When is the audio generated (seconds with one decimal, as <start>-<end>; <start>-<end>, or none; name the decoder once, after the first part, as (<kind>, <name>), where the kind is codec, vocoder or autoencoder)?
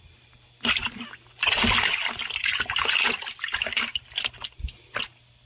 none